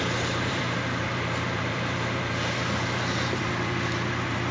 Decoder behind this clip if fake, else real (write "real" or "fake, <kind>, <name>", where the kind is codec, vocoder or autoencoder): fake, vocoder, BigVGAN v2